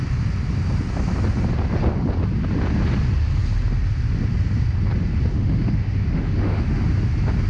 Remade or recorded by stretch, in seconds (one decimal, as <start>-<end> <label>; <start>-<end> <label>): 0.0-5.3 recorded; 5.3-6.8 remade; 6.8-7.5 recorded